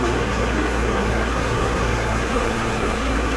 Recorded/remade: remade